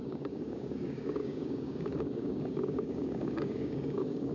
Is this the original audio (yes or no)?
no